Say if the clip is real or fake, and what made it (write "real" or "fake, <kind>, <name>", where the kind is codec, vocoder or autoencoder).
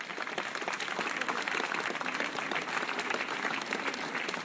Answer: real